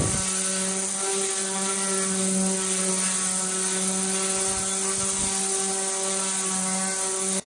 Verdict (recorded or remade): recorded